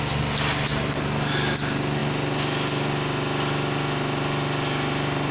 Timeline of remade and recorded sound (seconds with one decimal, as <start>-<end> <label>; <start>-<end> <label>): 0.0-5.3 recorded